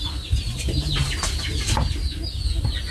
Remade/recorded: recorded